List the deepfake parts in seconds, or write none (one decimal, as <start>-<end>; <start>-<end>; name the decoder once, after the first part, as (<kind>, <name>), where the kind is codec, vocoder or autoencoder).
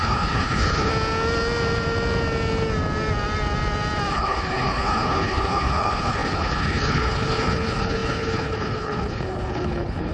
0.0-0.9 (codec, HILCodec); 4.1-10.1